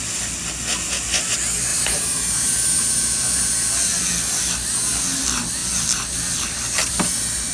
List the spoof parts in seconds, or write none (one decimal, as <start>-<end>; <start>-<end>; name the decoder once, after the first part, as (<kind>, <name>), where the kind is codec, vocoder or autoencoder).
1.7-3.5 (vocoder, BigVGAN v2)